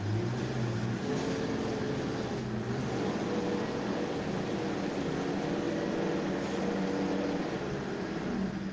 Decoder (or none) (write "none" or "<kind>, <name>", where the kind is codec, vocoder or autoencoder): none